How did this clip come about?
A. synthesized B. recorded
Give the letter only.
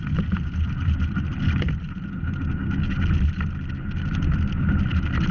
B